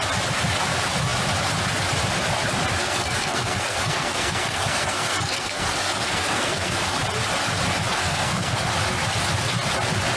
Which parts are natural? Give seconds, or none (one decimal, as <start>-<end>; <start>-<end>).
0.0-2.8; 6.8-7.9; 8.6-10.2